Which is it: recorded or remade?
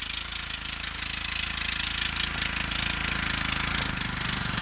recorded